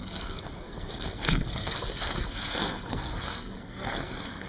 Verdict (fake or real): fake